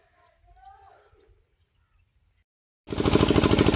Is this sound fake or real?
real